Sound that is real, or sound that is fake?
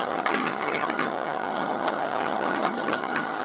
fake